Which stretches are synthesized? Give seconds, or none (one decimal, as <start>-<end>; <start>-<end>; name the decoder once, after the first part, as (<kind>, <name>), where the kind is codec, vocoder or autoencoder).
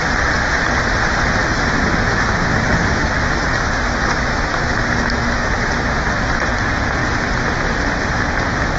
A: 1.4-5.5 (autoencoder, DAC-VAE)